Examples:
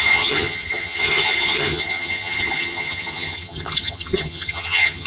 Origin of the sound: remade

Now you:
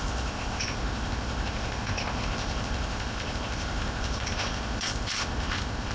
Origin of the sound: remade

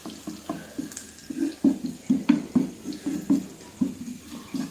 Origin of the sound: recorded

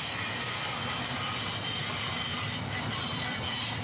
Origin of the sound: recorded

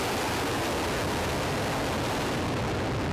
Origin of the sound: recorded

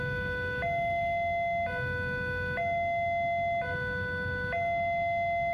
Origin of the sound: recorded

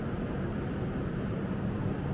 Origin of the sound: recorded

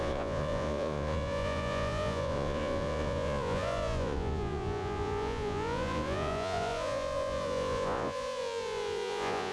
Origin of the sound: remade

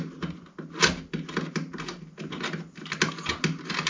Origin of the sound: recorded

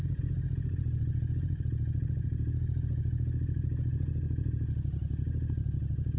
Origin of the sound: recorded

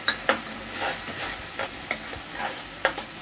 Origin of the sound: recorded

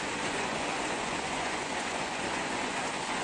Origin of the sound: remade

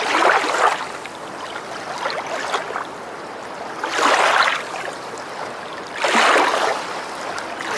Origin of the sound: recorded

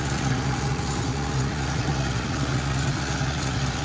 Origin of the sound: remade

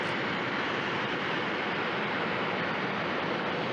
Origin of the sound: remade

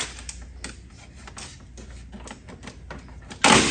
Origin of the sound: recorded